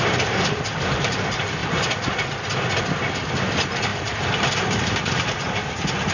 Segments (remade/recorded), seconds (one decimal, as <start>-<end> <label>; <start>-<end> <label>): 0.0-1.6 remade; 1.6-3.1 recorded; 3.1-6.1 remade